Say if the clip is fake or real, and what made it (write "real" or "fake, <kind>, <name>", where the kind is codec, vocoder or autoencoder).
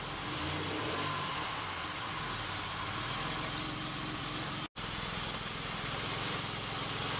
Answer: real